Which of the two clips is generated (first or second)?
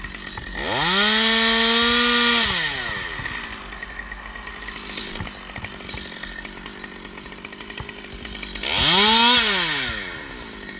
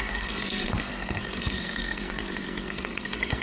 second